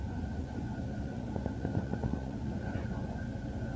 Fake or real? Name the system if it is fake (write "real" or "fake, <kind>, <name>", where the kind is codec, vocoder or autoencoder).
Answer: fake, vocoder, Vocos